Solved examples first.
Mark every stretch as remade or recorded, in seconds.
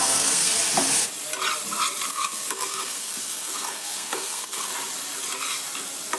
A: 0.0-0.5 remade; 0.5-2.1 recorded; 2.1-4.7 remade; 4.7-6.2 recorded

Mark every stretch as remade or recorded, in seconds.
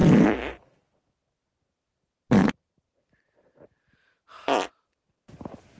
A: 0.0-0.6 remade; 0.6-2.4 recorded; 2.4-3.0 remade; 3.0-5.8 recorded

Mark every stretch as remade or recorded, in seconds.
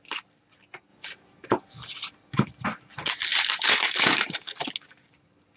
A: 0.0-5.6 recorded